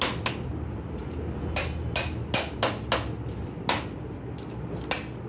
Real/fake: real